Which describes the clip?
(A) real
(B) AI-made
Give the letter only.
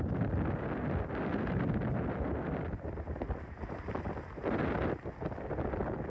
A